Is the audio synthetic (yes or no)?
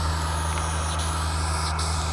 no